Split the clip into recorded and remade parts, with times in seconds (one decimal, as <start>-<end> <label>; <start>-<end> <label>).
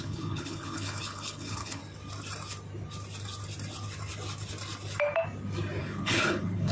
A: 0.0-1.8 remade; 1.8-5.8 recorded; 5.8-6.7 remade